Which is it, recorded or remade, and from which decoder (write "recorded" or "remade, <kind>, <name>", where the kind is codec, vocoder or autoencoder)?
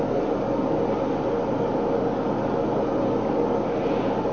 recorded